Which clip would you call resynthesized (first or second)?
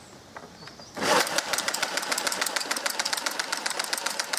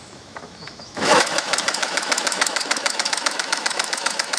second